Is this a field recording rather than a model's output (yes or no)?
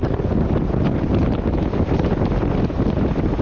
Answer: yes